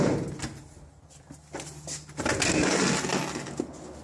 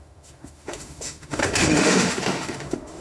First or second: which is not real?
second